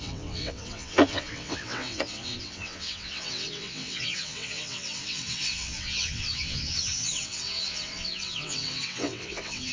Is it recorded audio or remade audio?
remade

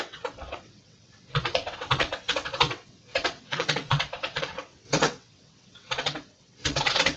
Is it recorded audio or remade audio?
remade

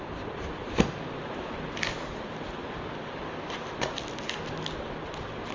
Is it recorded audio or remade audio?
recorded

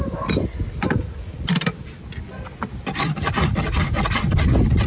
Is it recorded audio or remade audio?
recorded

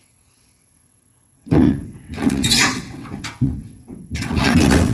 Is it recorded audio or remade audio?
remade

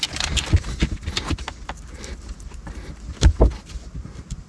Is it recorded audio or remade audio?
recorded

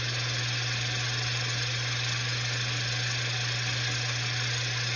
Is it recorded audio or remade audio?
recorded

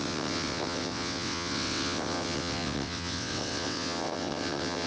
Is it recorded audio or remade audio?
remade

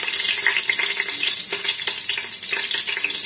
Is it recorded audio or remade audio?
recorded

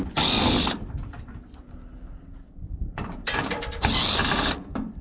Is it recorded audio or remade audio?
recorded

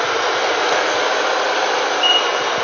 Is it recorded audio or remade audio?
recorded